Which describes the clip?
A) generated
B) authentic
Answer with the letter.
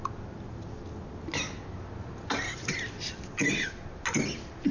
B